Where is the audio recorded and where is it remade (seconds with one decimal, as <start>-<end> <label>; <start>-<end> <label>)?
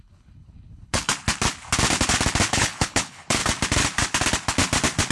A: 0.0-1.1 remade; 1.1-2.5 recorded; 2.5-3.4 remade; 3.4-5.1 recorded